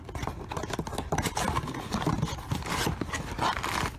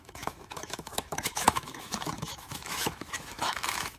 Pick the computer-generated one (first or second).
second